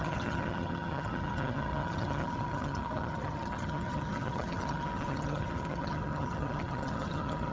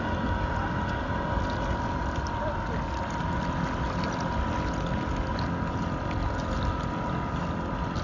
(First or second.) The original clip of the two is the second